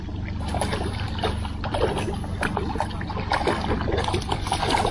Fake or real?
real